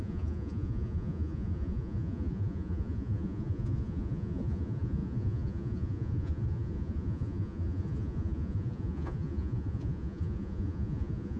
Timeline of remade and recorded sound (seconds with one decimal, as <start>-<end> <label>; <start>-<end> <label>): 0.0-11.4 remade